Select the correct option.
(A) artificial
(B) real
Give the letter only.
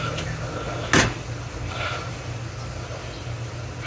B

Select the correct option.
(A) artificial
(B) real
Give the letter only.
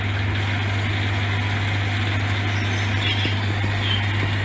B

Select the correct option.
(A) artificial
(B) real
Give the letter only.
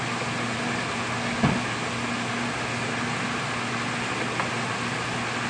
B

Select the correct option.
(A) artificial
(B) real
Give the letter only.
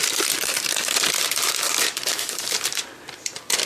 A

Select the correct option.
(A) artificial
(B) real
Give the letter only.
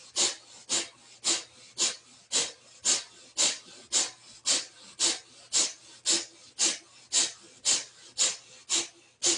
B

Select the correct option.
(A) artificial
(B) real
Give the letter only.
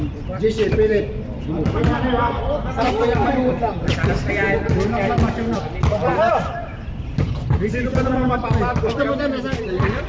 A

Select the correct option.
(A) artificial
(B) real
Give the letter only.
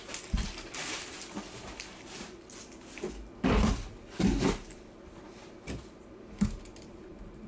A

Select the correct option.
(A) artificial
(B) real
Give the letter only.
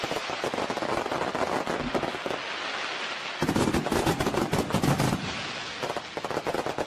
B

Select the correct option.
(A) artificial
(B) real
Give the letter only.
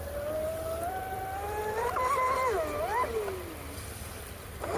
B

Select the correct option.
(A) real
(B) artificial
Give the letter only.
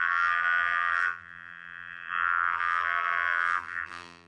B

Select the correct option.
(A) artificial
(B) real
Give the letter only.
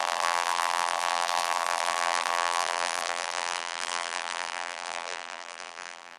A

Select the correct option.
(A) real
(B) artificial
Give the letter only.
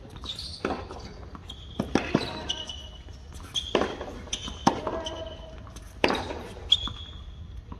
B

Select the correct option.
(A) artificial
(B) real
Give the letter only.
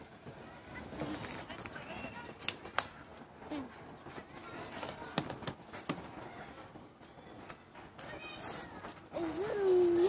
B